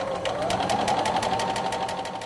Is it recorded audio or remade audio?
recorded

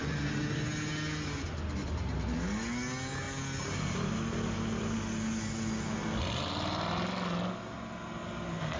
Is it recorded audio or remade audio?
recorded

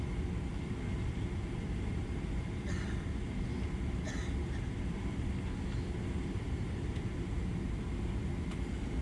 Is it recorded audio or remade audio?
remade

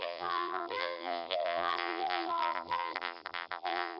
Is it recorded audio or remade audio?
remade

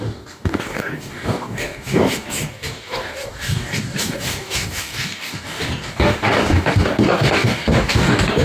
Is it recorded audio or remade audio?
remade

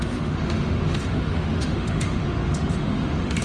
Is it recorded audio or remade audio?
remade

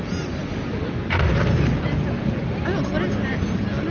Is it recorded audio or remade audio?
recorded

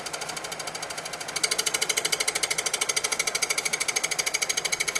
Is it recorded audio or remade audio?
recorded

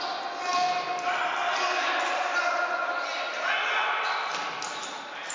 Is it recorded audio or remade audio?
recorded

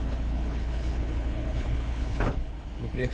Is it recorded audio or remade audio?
remade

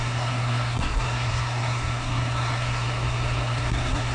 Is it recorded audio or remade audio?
remade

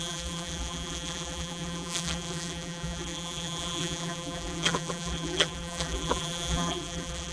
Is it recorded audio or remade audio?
remade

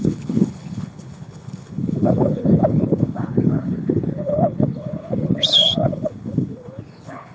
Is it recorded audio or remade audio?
remade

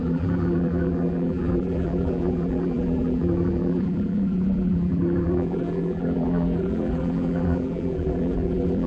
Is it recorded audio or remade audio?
remade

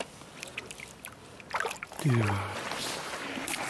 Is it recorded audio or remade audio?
recorded